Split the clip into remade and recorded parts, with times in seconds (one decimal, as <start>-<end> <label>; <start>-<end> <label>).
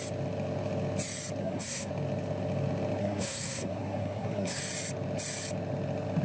0.0-1.4 recorded; 1.4-1.9 remade; 1.9-3.0 recorded; 3.0-4.6 remade; 4.6-6.2 recorded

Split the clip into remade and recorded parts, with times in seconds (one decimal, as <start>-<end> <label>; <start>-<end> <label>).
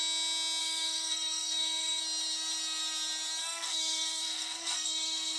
0.0-0.6 recorded; 0.6-2.0 remade; 2.0-3.4 recorded; 3.4-5.4 remade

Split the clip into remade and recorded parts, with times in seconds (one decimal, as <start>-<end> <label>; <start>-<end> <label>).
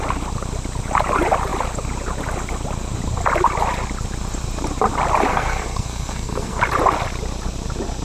0.0-5.3 recorded; 5.3-6.6 remade; 6.6-8.0 recorded